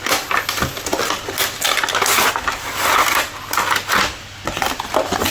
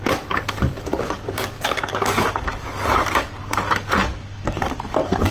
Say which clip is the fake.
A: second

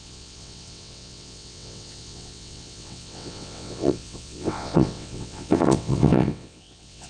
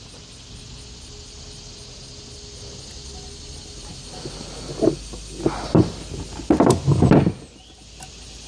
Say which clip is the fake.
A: first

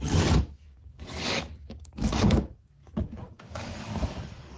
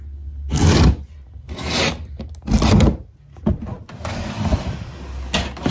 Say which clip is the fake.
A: first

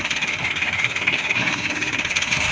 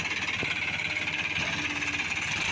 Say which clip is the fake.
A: first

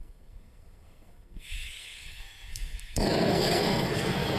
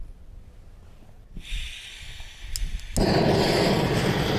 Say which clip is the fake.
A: first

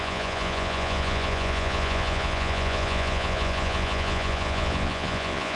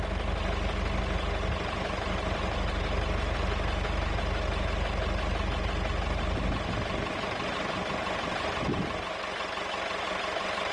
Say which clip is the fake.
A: first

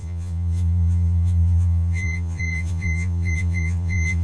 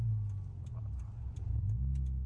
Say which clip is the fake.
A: first